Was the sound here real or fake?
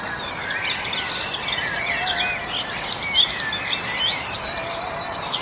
real